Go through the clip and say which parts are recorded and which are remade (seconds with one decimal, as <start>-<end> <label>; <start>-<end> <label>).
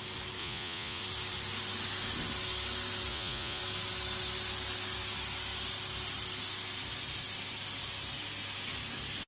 0.0-0.4 recorded; 0.4-1.0 remade; 1.0-3.1 recorded; 3.1-3.6 remade; 3.6-9.3 recorded